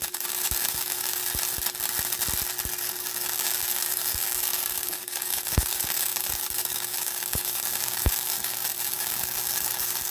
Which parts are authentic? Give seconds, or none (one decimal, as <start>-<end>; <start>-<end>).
1.2-2.8